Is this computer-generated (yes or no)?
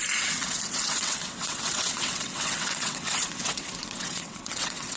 yes